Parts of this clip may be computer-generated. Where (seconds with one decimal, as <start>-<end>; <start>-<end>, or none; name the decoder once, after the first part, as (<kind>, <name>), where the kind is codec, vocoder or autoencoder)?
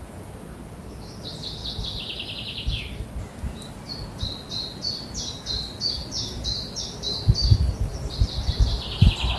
none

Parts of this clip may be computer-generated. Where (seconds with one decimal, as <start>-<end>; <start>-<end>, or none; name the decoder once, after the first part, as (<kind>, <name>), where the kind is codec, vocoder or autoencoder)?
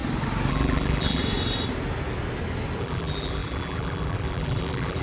0.5-1.2 (vocoder, BigVGAN v2); 2.8-5.0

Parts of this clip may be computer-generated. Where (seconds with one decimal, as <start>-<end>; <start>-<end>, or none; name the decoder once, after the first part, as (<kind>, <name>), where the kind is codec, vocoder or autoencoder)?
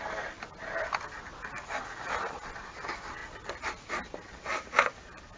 3.2-4.6 (vocoder, BigVGAN v2)